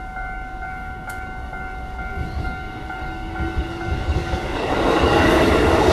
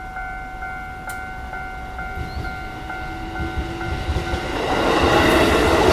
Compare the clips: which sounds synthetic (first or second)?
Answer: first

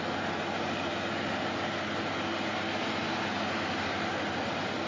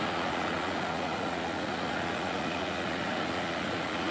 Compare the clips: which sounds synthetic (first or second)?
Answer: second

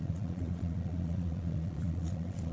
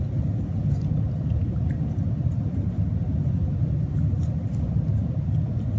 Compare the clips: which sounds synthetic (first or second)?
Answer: first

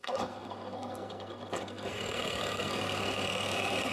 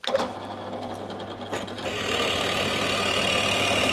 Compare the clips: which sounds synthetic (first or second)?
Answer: first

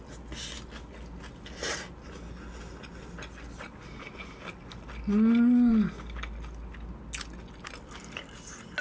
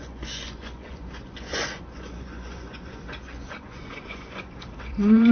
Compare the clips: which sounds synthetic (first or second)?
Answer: second